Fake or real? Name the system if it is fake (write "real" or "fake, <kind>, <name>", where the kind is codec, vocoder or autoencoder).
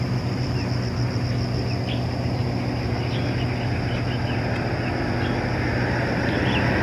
real